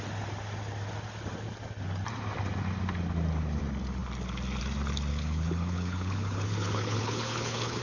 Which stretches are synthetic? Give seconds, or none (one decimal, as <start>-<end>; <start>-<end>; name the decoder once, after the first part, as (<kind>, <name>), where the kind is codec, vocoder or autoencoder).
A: 5.1-7.8 (codec, HILCodec)